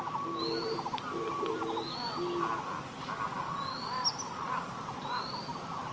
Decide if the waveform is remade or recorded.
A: recorded